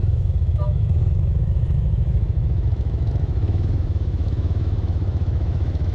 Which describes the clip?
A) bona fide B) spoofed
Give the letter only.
B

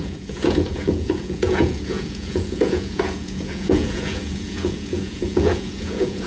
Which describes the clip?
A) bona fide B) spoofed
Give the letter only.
B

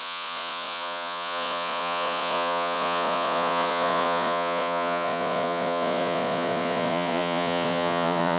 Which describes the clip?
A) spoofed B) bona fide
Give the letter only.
A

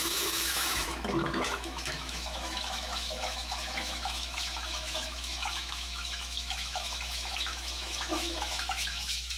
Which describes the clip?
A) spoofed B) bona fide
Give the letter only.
A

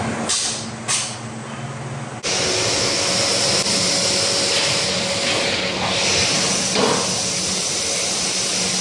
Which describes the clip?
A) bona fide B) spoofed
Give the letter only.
A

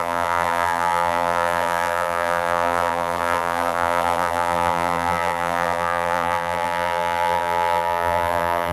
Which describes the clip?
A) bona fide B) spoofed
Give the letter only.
B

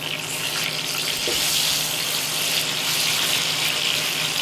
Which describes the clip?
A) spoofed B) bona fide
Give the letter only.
B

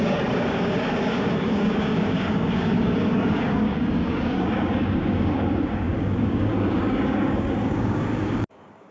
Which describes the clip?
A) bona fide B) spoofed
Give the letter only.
B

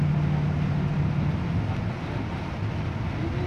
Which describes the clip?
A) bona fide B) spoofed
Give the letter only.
A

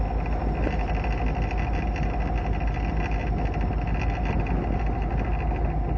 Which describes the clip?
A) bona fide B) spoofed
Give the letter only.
A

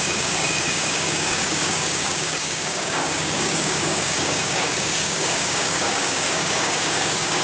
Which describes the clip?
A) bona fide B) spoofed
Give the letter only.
B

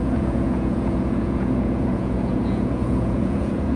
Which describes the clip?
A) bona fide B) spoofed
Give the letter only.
B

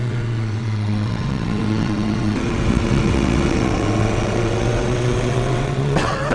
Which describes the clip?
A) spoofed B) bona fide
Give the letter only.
A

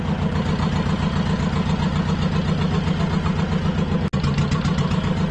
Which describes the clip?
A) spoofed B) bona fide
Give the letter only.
B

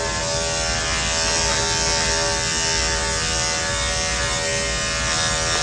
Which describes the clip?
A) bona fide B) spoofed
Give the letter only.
A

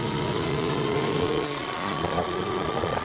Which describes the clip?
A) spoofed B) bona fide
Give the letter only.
A